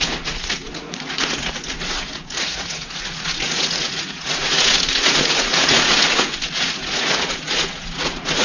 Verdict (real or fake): fake